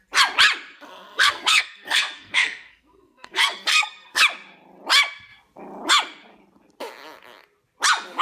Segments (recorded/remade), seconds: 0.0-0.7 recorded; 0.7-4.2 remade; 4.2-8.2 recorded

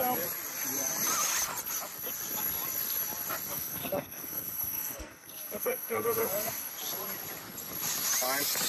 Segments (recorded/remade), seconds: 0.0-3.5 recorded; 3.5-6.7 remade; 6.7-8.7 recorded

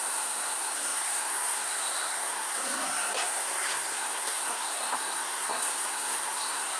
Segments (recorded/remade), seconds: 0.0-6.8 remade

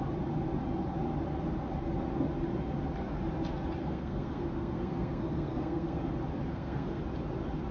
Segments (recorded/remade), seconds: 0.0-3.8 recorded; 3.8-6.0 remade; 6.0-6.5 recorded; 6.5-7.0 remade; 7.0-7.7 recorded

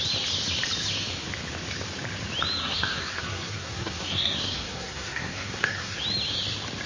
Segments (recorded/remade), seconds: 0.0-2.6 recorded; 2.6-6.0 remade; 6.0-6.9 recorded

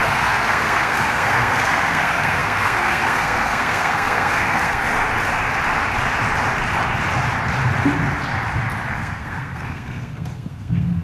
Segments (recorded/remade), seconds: 0.0-4.9 remade; 4.9-8.9 recorded; 8.9-11.0 remade

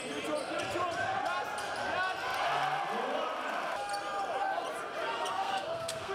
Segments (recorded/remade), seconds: 0.0-5.3 recorded; 5.3-6.1 remade

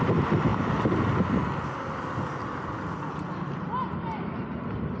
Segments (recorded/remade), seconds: 0.0-5.0 recorded